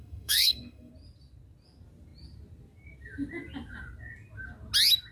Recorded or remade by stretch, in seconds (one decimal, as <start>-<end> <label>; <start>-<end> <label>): 0.0-0.9 remade; 0.9-5.1 recorded